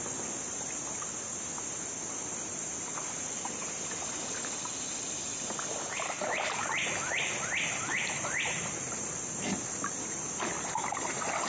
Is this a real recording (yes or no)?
yes